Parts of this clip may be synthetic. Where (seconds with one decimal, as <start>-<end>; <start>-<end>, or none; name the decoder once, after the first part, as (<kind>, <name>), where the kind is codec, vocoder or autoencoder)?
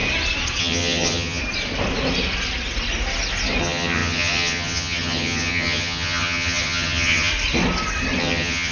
0.6-1.4 (vocoder, HiFi-GAN); 3.6-7.3; 8.2-8.7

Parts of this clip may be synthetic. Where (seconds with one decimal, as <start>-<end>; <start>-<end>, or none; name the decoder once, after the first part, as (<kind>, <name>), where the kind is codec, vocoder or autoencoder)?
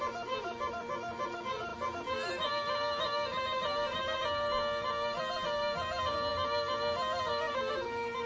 none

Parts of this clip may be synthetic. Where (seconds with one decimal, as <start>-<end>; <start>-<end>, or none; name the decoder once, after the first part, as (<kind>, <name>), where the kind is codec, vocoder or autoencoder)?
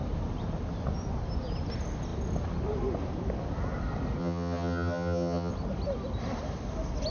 4.2-5.5 (vocoder, HiFi-GAN)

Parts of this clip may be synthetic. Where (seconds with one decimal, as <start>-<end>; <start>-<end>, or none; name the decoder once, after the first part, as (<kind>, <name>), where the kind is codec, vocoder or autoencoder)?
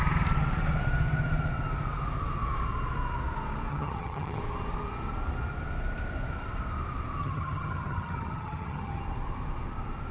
3.7-4.4 (vocoder, HiFi-GAN); 7.2-9.0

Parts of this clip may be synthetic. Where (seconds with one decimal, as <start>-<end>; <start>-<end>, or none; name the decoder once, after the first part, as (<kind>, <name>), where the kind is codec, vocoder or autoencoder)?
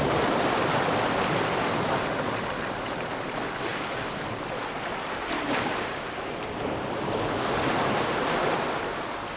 none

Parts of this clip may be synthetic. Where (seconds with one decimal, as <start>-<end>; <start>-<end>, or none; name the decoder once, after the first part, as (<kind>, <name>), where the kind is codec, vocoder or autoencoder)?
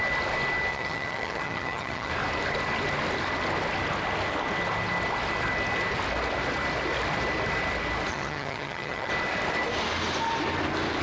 0.7-2.1 (vocoder, HiFi-GAN); 8.1-9.1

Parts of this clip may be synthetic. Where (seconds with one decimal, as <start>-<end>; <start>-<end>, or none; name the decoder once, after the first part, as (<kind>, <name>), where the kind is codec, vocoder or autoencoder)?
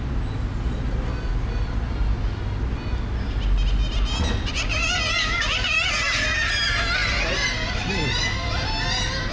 none